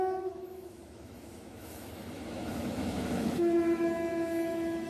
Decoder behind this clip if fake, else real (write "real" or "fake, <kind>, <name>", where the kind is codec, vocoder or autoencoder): fake, autoencoder, DAC-VAE